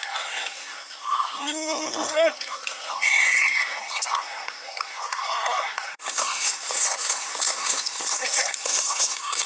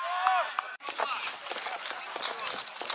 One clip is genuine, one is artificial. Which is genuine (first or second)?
second